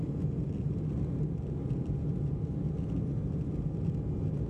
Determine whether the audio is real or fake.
real